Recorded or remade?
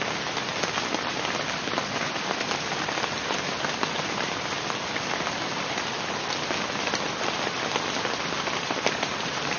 recorded